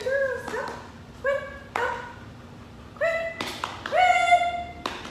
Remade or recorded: recorded